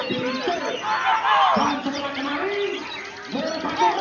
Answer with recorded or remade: recorded